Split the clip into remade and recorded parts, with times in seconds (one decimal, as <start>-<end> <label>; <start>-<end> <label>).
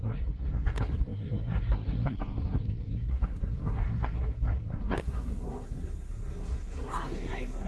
0.0-7.7 remade